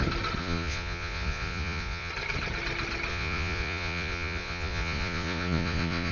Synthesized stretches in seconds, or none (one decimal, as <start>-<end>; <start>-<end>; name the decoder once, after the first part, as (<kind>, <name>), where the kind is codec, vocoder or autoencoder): 0.4-2.1 (vocoder, Vocos); 3.1-6.1